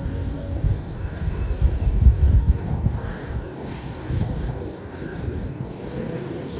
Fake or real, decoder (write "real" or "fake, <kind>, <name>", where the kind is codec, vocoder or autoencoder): fake, codec, DAC